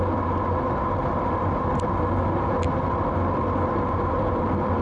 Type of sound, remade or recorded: recorded